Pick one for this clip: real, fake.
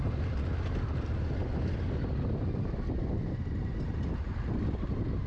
real